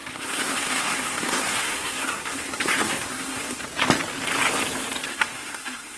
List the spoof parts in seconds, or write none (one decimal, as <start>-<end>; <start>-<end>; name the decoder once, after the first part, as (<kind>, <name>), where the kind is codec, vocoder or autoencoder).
0.0-3.6 (codec, SNAC); 5.1-6.0